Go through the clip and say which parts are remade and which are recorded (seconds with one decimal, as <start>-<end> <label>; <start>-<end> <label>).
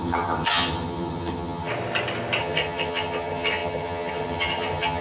0.0-1.7 remade; 1.7-2.4 recorded; 2.4-5.0 remade